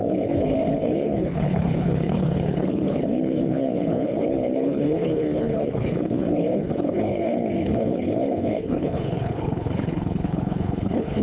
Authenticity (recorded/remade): remade